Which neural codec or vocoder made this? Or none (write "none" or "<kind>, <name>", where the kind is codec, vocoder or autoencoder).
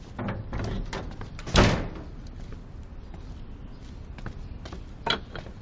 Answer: none